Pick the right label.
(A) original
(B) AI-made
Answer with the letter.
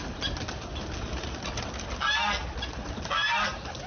A